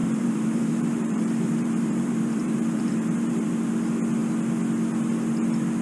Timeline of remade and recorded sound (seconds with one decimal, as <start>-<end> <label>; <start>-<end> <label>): 0.0-3.5 remade; 3.5-5.8 recorded